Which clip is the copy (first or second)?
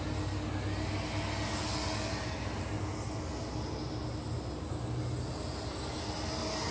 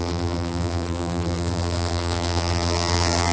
second